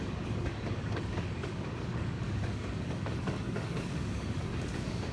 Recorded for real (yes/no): no